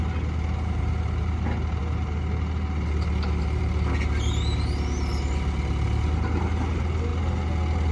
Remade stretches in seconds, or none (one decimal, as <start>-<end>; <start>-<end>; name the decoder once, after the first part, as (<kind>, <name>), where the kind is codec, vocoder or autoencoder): none